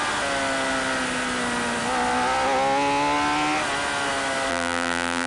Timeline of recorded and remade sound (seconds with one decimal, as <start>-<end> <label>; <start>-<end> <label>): 0.0-4.5 recorded; 4.5-5.3 remade